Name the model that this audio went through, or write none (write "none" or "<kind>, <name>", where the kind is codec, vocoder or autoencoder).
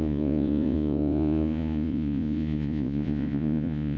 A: vocoder, Vocos